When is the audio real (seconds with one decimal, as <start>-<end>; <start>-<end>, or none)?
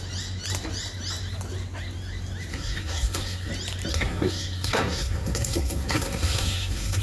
0.0-2.5; 3.5-3.9